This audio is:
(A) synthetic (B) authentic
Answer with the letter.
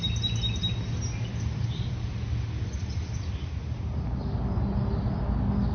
B